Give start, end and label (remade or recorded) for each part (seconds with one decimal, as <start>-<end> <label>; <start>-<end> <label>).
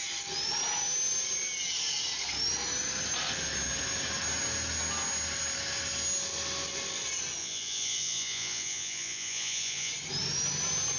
0.0-7.4 recorded; 7.4-9.9 remade; 9.9-11.0 recorded